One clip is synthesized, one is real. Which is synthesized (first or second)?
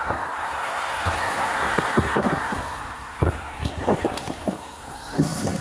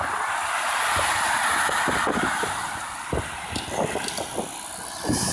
first